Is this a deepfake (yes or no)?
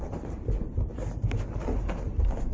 no